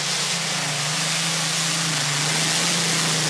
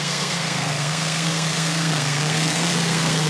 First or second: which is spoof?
second